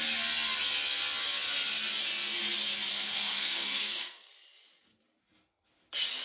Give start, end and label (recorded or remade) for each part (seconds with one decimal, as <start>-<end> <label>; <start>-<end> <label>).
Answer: 0.0-2.9 recorded; 2.9-4.3 remade; 4.3-6.2 recorded